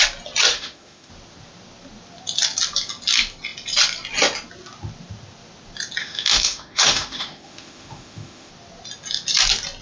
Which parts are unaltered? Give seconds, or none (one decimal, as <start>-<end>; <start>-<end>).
0.0-0.5; 1.1-6.0; 8.5-9.8